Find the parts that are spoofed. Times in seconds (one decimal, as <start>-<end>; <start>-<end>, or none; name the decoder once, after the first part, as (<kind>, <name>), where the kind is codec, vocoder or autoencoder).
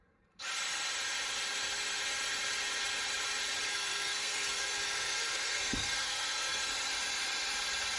3.7-6.7 (codec, SNAC)